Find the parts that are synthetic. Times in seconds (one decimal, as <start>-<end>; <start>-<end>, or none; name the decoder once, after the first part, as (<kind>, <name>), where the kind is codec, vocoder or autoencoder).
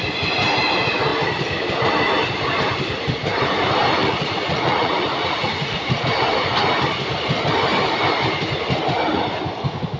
4.0-6.0 (vocoder, Vocos)